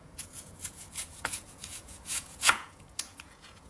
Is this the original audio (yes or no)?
no